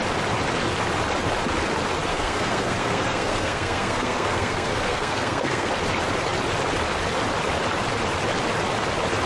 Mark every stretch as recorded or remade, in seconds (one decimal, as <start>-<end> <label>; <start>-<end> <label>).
0.0-2.1 recorded; 2.1-5.7 remade; 5.7-9.3 recorded